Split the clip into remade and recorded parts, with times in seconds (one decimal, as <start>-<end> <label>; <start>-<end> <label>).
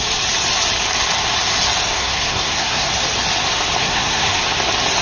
0.0-1.9 recorded; 1.9-2.9 remade; 2.9-3.8 recorded; 3.8-4.4 remade; 4.4-5.0 recorded